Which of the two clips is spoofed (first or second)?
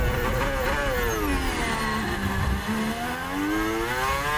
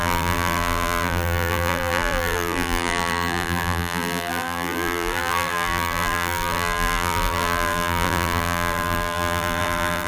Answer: second